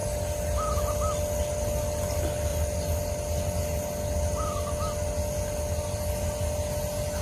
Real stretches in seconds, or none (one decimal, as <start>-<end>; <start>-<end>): 0.0-7.2